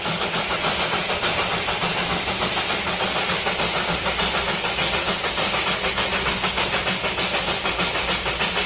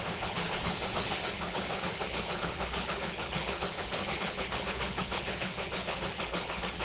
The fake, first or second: second